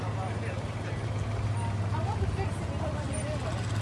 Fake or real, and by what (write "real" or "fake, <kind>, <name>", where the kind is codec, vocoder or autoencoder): real